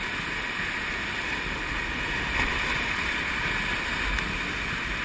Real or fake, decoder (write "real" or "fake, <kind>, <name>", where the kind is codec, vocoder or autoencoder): real